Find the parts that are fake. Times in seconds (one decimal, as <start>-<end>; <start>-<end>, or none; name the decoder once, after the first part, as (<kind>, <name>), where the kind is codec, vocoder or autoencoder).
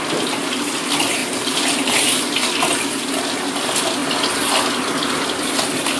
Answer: 1.2-1.9 (vocoder, BigVGAN v2)